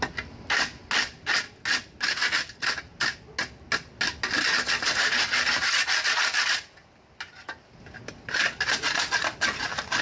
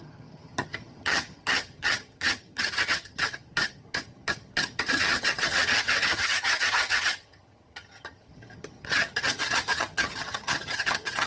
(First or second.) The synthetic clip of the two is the second